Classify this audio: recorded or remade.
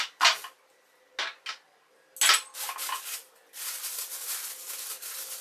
recorded